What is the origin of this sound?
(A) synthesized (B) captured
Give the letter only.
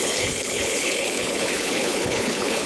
A